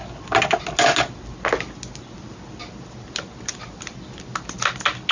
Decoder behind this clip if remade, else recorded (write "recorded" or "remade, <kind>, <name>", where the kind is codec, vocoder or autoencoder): recorded